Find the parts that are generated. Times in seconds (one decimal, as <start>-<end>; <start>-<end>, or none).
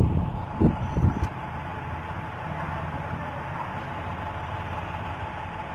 none